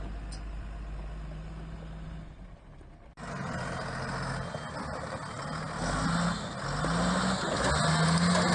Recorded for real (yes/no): yes